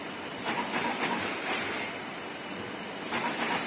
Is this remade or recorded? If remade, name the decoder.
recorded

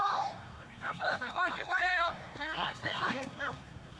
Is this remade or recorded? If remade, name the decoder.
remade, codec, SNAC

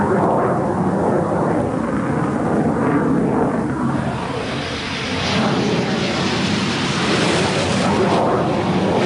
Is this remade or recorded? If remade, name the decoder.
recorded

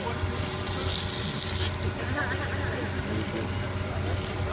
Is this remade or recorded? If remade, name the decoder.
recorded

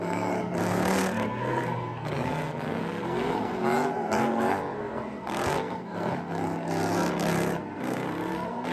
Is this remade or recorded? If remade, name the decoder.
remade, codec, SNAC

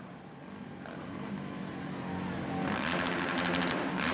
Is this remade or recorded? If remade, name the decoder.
recorded